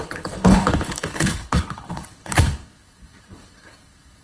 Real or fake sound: fake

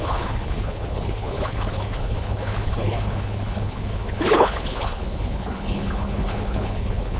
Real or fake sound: fake